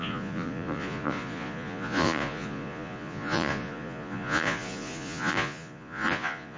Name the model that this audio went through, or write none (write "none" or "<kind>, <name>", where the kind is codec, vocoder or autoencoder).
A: vocoder, Vocos